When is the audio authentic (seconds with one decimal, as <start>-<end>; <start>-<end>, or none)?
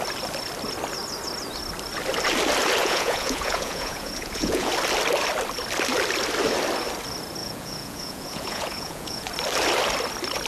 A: 0.0-2.8; 4.7-7.4; 9.3-10.5